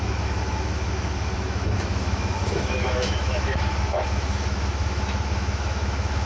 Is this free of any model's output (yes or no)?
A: no